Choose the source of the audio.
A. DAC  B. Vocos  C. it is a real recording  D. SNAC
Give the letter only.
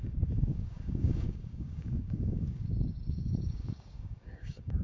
A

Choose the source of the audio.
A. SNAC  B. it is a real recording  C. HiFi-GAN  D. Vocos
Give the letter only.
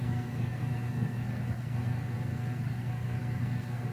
A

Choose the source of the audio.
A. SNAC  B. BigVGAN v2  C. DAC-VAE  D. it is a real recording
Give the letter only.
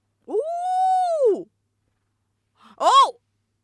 D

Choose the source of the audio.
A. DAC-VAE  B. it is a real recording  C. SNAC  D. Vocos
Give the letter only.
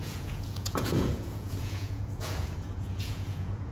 D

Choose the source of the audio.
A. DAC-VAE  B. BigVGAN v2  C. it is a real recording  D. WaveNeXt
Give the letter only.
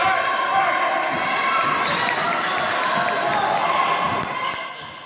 C